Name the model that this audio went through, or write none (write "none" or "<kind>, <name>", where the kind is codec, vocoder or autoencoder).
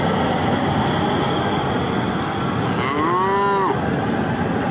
none